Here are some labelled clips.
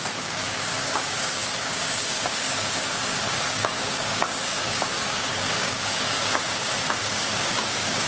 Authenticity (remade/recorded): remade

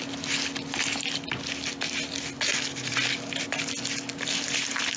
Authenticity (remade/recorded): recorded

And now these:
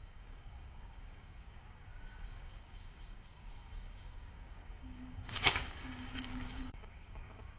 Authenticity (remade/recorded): remade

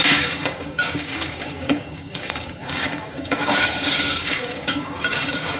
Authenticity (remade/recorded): remade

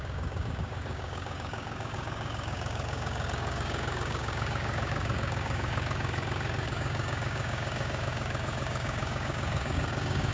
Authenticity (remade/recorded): remade